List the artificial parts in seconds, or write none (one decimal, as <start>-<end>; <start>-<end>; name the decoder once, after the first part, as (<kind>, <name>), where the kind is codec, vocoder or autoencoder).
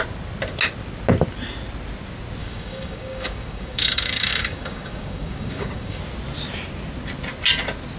2.4-6.0 (codec, DAC)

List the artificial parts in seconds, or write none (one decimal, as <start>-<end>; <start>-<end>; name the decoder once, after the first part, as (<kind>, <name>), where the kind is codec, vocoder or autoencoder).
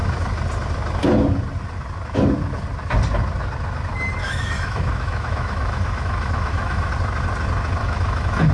4.2-6.9 (autoencoder, DAC-VAE); 7.8-8.5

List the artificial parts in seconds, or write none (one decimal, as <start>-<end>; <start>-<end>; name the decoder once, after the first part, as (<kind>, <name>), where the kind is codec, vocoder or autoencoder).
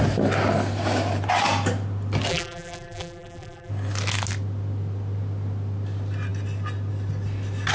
2.3-3.7 (vocoder, BigVGAN v2)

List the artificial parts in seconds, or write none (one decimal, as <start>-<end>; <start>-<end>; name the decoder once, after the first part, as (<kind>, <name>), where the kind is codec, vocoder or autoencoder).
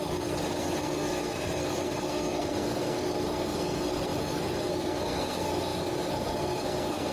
0.0-7.1 (codec, SNAC)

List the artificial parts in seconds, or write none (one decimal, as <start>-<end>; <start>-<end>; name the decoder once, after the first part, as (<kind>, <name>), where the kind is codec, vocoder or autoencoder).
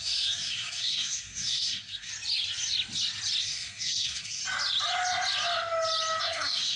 0.0-2.1 (codec, SNAC); 3.4-4.4; 6.2-6.8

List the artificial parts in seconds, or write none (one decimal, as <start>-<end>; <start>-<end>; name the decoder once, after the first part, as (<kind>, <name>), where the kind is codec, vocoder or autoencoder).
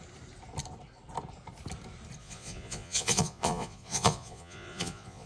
2.2-5.3 (vocoder, Vocos)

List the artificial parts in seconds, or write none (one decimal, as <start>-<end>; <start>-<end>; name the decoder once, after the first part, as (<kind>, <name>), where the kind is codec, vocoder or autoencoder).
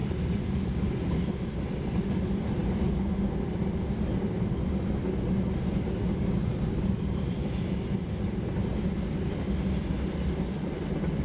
none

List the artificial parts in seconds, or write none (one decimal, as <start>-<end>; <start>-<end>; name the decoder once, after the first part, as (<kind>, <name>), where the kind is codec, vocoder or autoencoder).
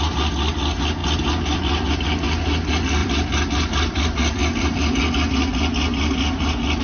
1.0-1.9 (vocoder, BigVGAN v2); 3.0-5.1